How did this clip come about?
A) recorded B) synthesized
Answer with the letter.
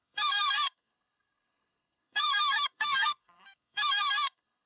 B